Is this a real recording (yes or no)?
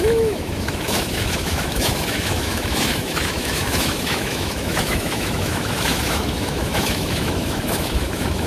no